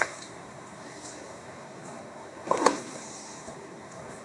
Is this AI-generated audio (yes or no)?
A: yes